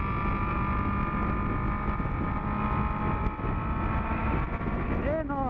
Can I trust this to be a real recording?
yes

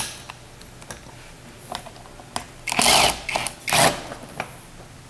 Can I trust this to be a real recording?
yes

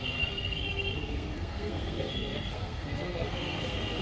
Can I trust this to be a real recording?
no